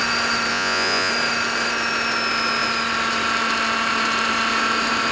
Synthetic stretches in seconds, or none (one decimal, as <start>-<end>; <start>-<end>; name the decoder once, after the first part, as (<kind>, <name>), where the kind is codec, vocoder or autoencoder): 0.5-1.1 (vocoder, Vocos)